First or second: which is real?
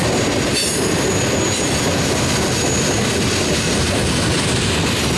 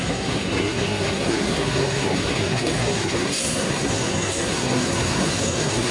first